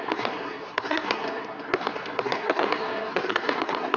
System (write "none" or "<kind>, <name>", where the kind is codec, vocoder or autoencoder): codec, SNAC